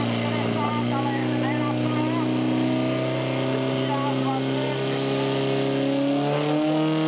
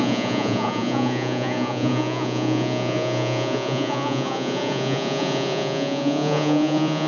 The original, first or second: first